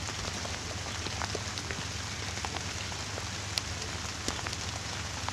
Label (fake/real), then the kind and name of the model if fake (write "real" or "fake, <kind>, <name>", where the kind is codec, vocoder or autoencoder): real